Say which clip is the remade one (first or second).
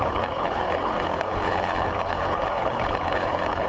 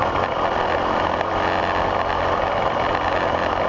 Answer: first